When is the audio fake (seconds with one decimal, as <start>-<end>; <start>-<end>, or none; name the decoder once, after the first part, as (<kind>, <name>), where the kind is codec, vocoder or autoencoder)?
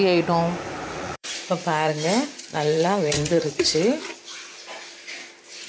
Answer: 0.9-1.5 (vocoder, Vocos); 2.5-3.8